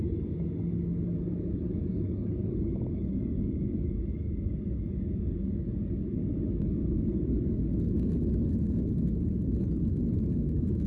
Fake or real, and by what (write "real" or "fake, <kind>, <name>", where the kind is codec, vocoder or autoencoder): fake, codec, DAC